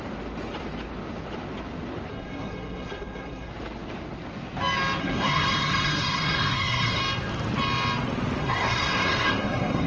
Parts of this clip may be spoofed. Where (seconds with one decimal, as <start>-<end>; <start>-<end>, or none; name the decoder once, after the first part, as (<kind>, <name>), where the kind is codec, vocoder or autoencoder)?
2.1-3.5 (codec, SNAC); 5.0-7.0; 8.4-9.9